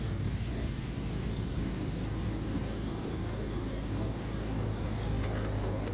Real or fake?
fake